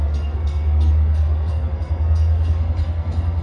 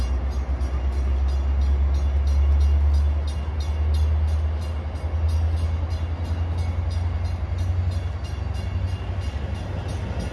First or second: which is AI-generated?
first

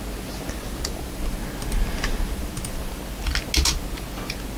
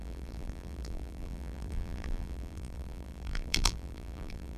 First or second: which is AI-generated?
second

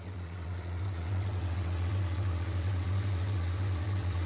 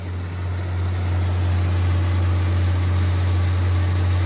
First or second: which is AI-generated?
first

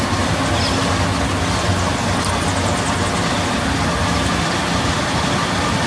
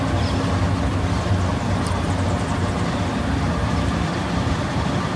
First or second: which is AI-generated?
second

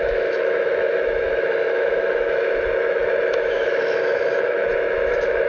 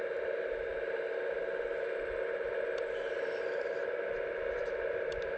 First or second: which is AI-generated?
first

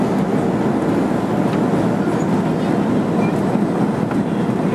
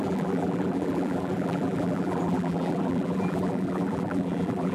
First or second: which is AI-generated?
second